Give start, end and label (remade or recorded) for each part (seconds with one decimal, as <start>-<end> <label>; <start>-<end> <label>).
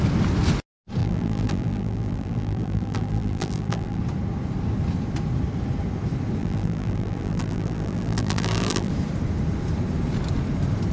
0.0-1.0 recorded; 1.0-4.0 remade; 4.0-6.4 recorded; 6.4-8.9 remade; 8.9-10.9 recorded